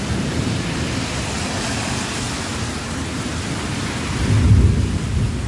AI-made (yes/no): no